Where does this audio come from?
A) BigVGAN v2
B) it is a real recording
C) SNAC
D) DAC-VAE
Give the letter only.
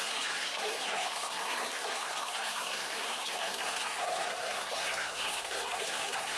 C